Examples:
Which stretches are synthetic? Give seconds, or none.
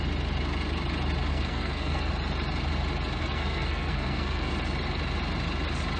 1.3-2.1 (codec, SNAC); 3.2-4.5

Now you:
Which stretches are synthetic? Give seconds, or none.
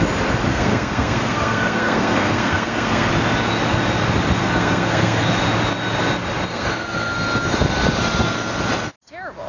0.5-3.1 (codec, SNAC); 4.4-5.3; 6.5-7.1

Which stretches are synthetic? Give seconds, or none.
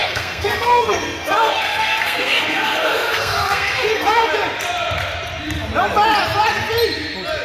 0.0-4.3 (codec, SNAC)